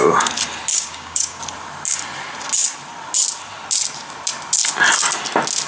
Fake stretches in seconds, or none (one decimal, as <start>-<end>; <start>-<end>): 0.7-1.4